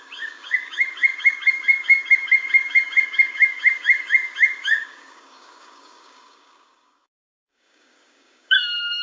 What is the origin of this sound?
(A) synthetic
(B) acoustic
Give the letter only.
A